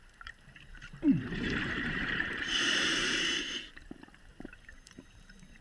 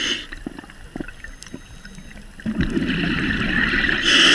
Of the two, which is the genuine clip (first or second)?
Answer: second